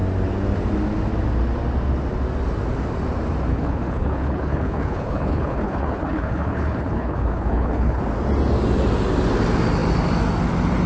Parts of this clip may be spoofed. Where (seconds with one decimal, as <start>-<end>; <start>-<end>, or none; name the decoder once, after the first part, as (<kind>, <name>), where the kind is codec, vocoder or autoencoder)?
3.5-8.0 (codec, HILCodec)